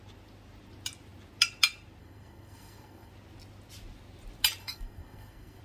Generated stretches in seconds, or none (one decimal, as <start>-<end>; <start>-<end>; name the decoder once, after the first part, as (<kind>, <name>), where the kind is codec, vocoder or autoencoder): 2.0-3.1 (codec, SNAC); 4.6-5.6